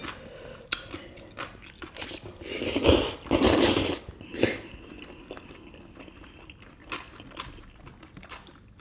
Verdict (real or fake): real